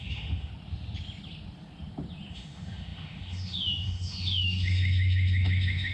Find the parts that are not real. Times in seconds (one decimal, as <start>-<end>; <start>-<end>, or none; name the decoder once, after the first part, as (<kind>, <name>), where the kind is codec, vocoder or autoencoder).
0.0-0.5 (autoencoder, DAC-VAE); 2.3-5.9